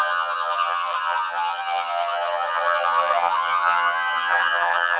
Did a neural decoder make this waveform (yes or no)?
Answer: yes